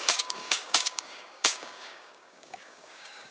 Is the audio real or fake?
fake